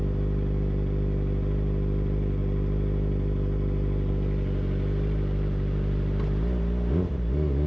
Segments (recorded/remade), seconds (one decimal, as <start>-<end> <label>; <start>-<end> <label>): 0.0-7.7 recorded

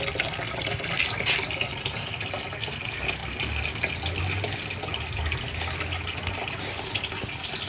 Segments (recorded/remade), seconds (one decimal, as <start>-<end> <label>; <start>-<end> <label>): 0.0-7.7 recorded